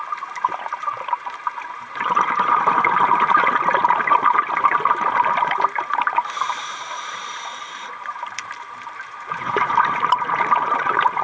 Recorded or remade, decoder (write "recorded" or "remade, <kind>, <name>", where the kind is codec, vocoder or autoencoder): remade, vocoder, BigVGAN v2